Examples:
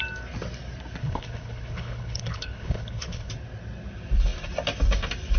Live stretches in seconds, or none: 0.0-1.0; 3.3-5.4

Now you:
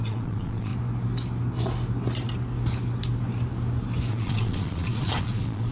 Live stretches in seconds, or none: 0.7-4.1

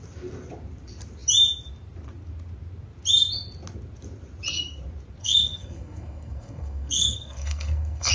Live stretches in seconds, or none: 0.0-5.2

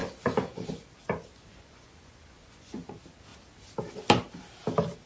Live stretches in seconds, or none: 0.7-1.3; 2.9-5.1

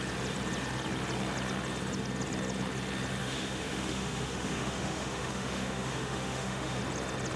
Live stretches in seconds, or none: 0.0-3.2; 6.8-7.4

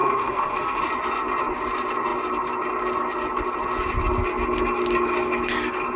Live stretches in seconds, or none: 0.8-6.0